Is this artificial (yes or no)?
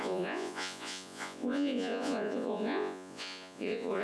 yes